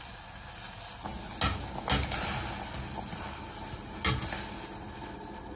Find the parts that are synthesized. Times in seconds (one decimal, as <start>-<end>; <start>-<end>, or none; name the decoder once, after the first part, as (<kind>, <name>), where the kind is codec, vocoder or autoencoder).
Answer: none